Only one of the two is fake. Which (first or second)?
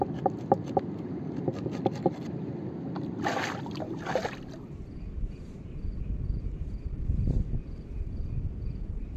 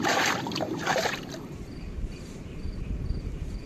second